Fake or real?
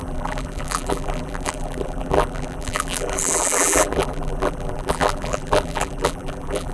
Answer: fake